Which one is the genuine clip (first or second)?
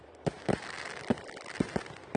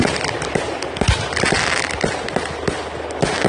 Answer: second